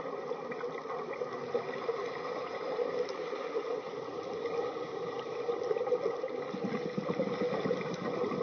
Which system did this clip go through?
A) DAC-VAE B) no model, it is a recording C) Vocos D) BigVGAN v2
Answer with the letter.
B